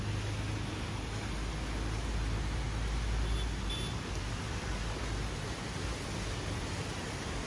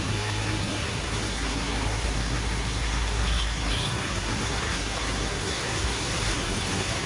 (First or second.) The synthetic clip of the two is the second